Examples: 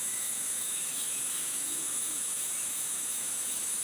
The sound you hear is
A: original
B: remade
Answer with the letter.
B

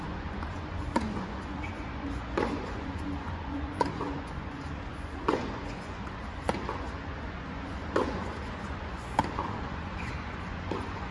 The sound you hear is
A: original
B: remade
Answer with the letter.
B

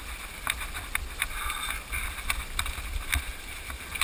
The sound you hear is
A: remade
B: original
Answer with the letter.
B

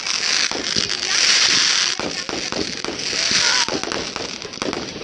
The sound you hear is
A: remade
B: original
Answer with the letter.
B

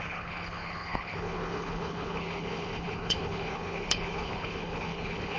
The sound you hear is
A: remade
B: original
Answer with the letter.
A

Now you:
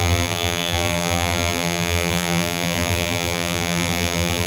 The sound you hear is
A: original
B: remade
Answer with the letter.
B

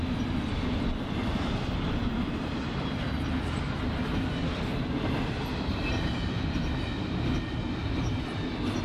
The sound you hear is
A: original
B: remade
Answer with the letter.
A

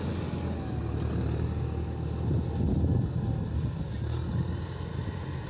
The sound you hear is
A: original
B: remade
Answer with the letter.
A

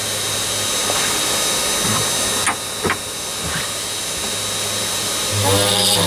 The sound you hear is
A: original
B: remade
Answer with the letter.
A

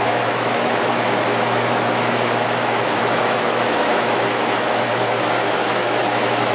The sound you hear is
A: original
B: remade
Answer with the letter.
B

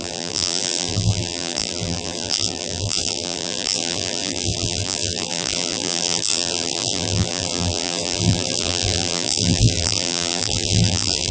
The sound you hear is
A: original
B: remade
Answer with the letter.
B